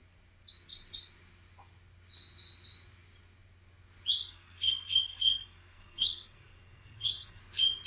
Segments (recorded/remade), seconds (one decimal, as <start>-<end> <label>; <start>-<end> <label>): 0.0-4.2 recorded; 4.2-7.4 remade; 7.4-7.9 recorded